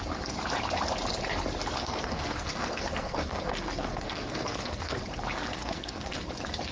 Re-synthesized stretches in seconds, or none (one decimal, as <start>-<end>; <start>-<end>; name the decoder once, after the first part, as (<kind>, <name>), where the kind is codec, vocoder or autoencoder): 1.8-5.0 (codec, SNAC); 5.5-6.2

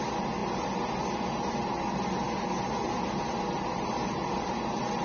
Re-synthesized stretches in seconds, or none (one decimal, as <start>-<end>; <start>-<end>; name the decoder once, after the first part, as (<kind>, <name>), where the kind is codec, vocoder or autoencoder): none

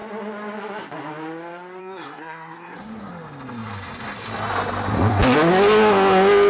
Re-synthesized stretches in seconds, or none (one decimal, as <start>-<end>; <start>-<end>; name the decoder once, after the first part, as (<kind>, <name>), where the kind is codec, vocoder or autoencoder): 1.8-3.1 (codec, SNAC)

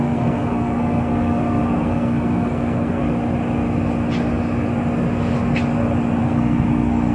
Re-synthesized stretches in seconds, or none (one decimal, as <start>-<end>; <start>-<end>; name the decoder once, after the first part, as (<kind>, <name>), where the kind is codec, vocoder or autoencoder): 0.0-3.0 (codec, SNAC); 6.2-7.1

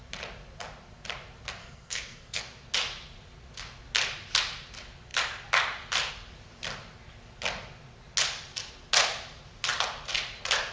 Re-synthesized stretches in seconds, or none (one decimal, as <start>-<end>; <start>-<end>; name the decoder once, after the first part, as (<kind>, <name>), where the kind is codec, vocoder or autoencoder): 1.6-2.4 (codec, SNAC)

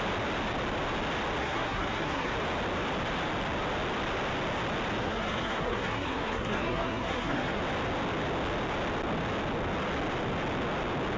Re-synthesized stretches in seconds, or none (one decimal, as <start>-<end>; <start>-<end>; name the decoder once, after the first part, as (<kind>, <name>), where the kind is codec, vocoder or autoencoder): 1.4-2.3 (codec, SNAC); 5.0-7.6